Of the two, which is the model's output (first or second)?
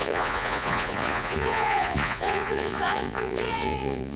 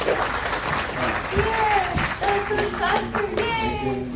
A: first